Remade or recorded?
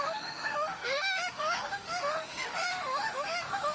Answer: remade